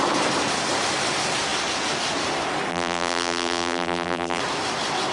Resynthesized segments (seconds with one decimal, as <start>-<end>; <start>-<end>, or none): 2.7-4.4